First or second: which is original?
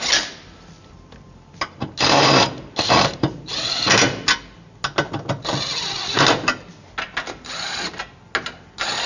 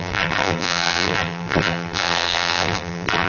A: first